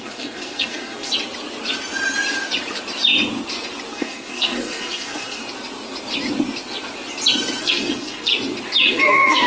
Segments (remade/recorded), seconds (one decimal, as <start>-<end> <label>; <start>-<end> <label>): 0.0-1.1 remade; 1.1-3.9 recorded; 3.9-5.4 remade; 5.4-7.6 recorded; 7.6-8.3 remade; 8.3-8.9 recorded; 8.9-9.5 remade